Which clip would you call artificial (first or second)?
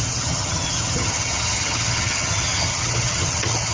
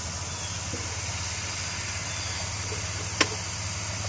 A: first